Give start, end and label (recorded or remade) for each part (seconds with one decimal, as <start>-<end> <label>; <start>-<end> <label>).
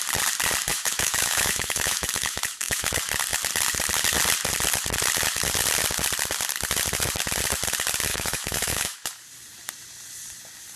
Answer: 0.0-0.7 recorded; 0.7-2.9 remade; 2.9-8.1 recorded; 8.1-9.1 remade; 9.1-10.8 recorded